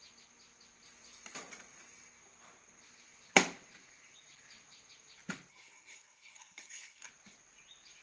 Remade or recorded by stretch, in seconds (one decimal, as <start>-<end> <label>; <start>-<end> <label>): 0.0-5.5 recorded; 5.5-7.1 remade; 7.1-8.0 recorded